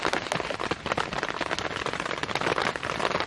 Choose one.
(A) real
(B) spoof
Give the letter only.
A